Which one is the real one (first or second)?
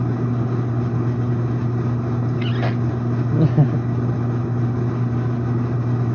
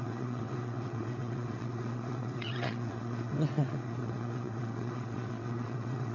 first